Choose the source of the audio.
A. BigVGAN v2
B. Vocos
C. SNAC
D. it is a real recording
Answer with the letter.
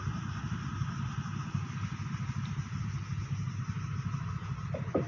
D